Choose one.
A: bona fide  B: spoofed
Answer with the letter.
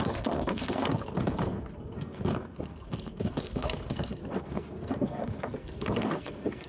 B